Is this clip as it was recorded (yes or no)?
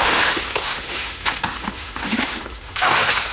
no